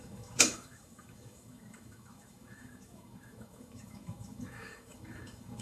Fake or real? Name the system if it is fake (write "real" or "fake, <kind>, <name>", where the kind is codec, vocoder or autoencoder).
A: fake, autoencoder, DAC-VAE